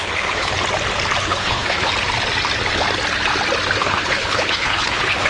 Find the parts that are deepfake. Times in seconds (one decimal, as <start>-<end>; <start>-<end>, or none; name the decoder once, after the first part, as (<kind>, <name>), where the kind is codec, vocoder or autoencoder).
0.0-0.5 (codec, HILCodec); 1.2-1.9; 3.8-5.3